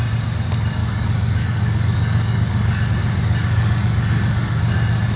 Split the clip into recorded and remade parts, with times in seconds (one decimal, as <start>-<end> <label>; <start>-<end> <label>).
0.0-0.8 recorded; 0.8-2.9 remade; 2.9-3.4 recorded; 3.4-4.6 remade; 4.6-5.2 recorded